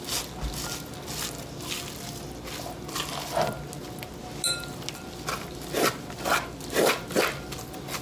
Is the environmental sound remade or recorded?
recorded